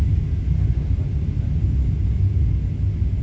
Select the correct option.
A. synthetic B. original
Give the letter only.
B